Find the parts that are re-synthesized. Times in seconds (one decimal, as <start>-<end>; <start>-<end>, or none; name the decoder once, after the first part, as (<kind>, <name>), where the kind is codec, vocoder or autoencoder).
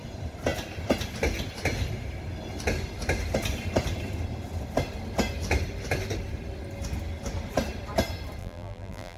8.4-9.2 (vocoder, BigVGAN v2)